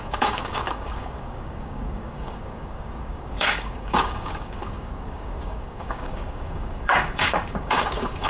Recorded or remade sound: remade